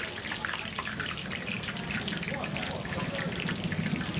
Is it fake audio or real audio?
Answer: real